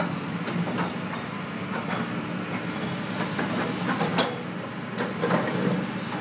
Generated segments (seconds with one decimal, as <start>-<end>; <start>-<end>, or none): none